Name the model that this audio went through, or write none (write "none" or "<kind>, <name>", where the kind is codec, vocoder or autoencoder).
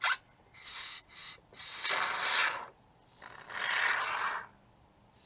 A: none